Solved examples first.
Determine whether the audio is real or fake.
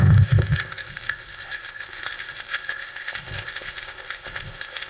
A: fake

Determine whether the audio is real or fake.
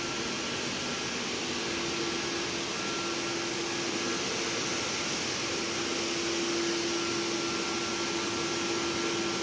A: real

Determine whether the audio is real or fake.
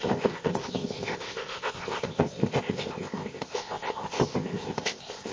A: fake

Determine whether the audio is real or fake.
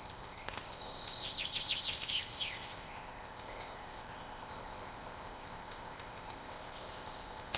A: fake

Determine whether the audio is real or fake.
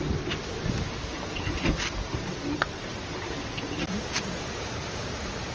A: real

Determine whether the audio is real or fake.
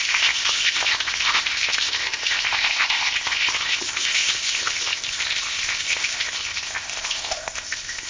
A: fake